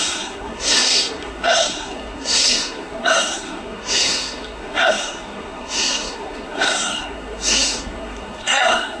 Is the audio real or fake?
fake